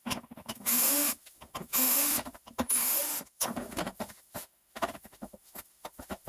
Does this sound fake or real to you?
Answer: fake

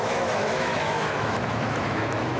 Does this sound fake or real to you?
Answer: fake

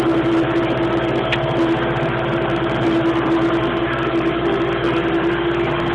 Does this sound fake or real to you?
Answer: real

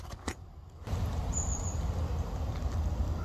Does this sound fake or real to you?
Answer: real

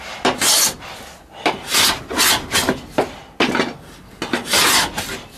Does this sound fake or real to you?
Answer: real